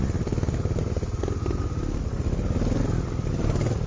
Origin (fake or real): real